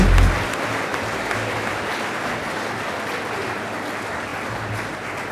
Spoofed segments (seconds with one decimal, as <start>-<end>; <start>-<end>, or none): 0.9-1.9

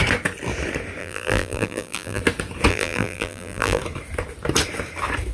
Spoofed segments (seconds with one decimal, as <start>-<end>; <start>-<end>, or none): 1.0-2.2; 2.7-3.8

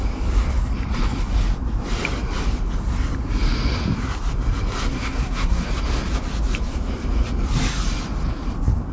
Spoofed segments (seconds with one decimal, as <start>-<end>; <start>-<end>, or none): 4.9-5.7

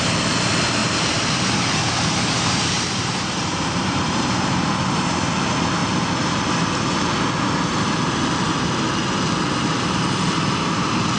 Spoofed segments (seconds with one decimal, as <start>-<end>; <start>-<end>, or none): 0.8-4.7